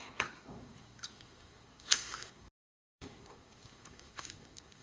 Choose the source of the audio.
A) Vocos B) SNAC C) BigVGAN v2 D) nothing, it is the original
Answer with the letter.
B